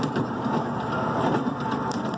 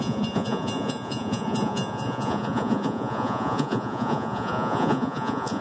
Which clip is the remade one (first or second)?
second